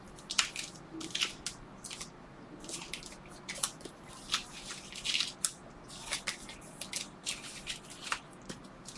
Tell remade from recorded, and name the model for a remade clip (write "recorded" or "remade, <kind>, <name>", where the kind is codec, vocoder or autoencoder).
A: recorded